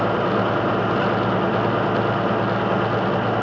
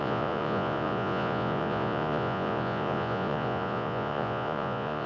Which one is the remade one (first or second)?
second